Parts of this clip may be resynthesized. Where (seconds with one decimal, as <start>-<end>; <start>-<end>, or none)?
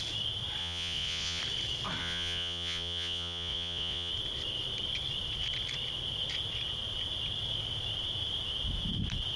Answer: 0.6-1.4; 2.0-4.1